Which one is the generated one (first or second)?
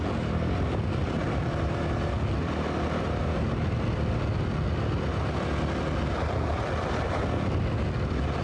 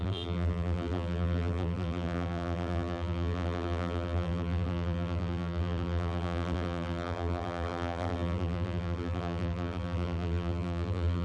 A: second